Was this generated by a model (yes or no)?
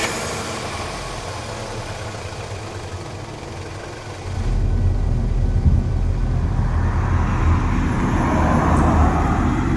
no